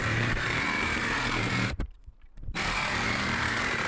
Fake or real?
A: fake